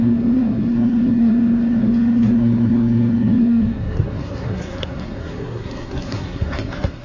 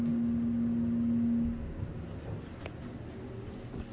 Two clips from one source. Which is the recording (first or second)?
second